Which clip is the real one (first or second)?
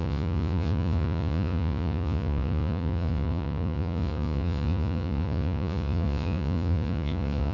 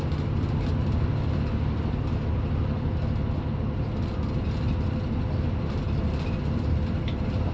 second